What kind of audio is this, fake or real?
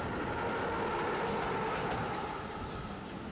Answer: real